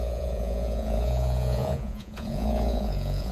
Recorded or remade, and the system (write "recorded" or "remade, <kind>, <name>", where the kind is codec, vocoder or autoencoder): remade, vocoder, Vocos